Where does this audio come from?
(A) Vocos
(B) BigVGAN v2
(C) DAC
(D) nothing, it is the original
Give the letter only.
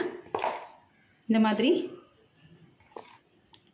D